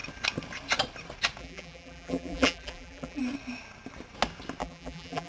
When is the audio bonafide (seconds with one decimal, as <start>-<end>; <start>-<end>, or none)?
0.0-1.4; 3.2-4.6